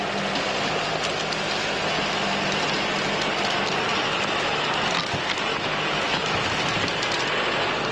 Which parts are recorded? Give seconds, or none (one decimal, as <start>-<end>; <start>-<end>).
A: 0.0-3.9; 4.7-5.5; 6.5-7.9